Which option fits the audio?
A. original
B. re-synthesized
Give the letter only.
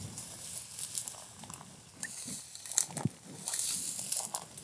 A